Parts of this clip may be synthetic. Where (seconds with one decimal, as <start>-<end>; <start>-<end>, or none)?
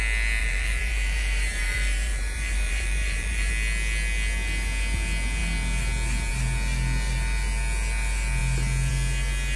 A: 0.4-3.5